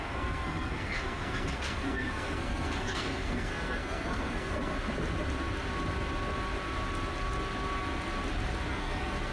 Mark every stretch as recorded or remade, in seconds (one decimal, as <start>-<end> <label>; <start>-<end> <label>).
0.0-4.7 remade; 4.7-8.7 recorded; 8.7-9.3 remade